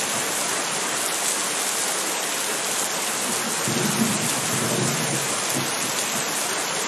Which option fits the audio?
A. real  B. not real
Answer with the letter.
A